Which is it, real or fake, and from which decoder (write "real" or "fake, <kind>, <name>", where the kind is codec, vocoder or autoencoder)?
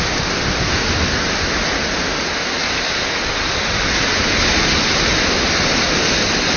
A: real